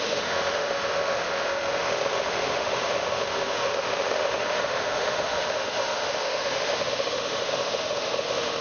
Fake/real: fake